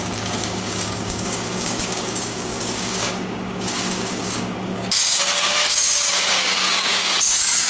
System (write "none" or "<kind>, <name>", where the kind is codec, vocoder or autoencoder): codec, DAC